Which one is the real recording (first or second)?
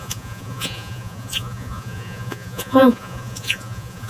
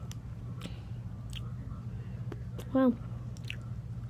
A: second